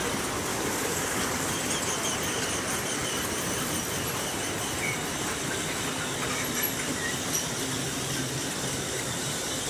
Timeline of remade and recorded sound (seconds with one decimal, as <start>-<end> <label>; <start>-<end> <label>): 0.0-0.5 recorded; 0.5-1.5 remade; 1.5-9.7 recorded